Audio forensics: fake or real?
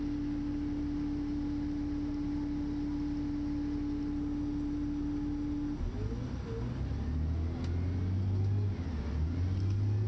real